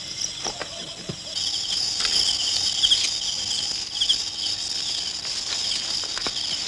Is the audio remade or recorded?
recorded